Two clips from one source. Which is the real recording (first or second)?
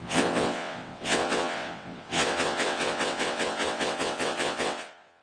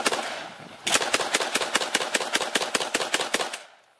second